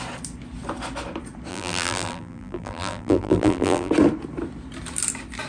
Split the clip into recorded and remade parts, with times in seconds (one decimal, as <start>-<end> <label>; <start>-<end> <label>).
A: 0.0-1.5 recorded; 1.5-3.9 remade; 3.9-5.5 recorded